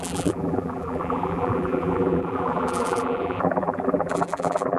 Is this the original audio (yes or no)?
no